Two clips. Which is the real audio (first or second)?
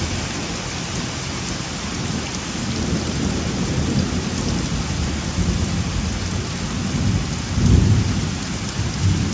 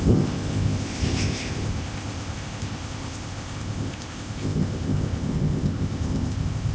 first